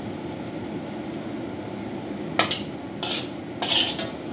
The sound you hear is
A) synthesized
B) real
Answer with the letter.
B